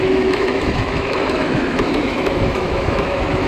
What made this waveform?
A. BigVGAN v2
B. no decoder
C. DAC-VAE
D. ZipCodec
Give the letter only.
C